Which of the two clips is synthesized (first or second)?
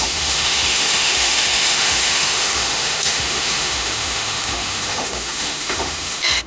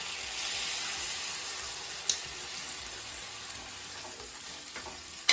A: first